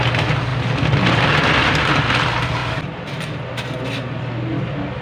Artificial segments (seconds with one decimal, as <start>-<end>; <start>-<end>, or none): 2.6-3.3